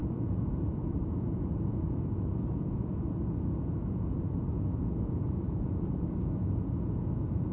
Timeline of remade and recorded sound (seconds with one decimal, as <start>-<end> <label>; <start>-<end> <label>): 0.0-7.5 remade